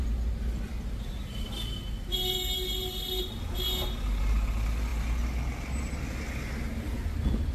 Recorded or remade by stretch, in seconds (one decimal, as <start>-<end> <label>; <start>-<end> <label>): 0.0-7.5 recorded